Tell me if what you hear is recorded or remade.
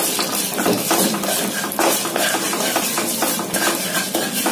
recorded